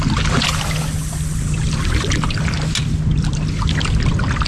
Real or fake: real